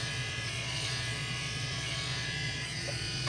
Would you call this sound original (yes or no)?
no